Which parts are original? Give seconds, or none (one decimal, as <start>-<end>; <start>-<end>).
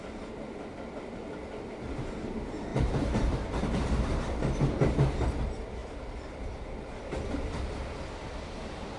0.0-2.7; 4.1-9.0